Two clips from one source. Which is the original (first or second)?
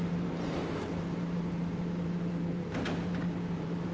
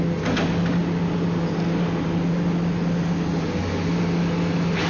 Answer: second